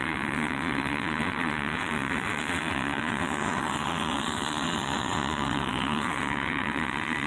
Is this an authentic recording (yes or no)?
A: no